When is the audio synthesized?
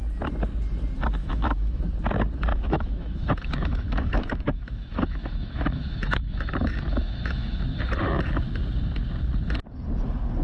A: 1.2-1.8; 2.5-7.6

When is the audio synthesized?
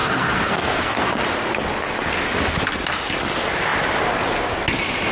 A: 0.0-1.2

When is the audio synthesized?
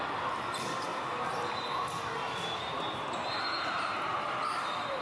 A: 0.9-3.9